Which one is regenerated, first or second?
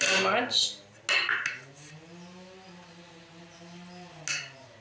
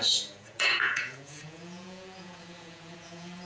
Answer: second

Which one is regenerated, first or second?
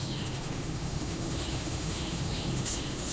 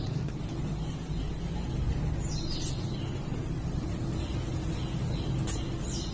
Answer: first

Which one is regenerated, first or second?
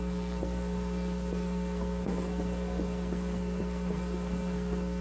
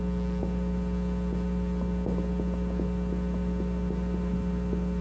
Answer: first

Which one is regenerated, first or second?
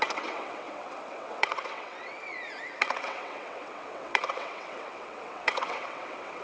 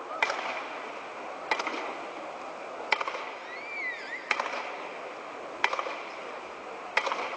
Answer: first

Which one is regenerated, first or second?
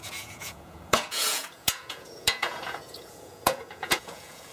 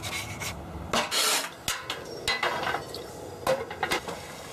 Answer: first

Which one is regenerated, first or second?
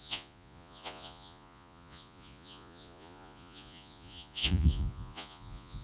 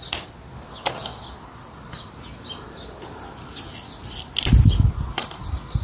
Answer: first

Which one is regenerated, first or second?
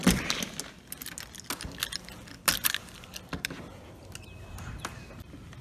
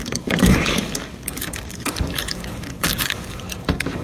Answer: second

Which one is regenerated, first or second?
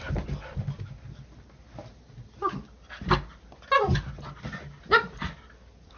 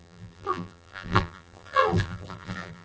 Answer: second